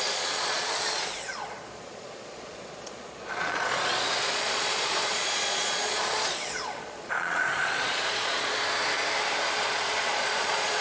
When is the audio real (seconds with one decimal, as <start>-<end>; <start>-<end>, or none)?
8.6-9.6